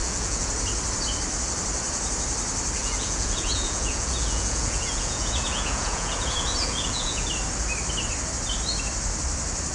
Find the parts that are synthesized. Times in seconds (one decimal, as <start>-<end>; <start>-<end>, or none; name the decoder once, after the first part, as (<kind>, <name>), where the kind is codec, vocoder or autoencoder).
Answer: 0.0-0.5 (vocoder, Vocos); 2.8-7.3